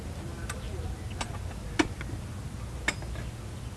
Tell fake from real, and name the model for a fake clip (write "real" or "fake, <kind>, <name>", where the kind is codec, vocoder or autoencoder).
real